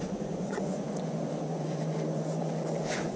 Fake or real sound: fake